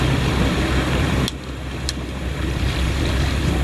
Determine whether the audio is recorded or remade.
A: remade